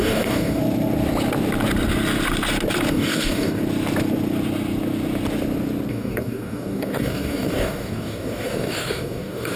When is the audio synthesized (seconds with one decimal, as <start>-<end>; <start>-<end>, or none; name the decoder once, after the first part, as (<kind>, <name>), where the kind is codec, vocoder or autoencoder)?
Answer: 0.0-0.6 (codec, DAC); 2.9-3.6; 5.9-9.6